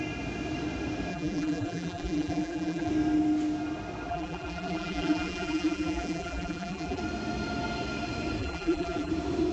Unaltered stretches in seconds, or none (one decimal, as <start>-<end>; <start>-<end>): 0.0-1.1; 2.9-4.1; 7.0-8.4; 9.1-9.5